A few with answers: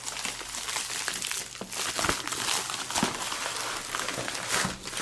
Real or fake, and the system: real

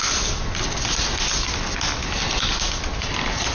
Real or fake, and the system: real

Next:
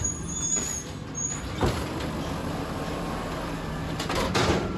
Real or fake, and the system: real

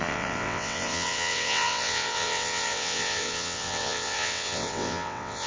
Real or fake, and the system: fake, vocoder, WaveNeXt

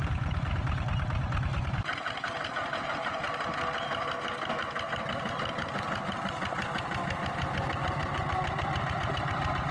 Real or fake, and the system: real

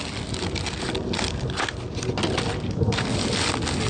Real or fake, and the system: real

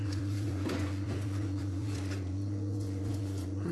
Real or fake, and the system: fake, vocoder, Vocos